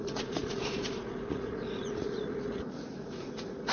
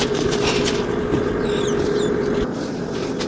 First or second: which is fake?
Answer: first